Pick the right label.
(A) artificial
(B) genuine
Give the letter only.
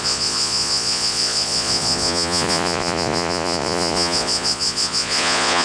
A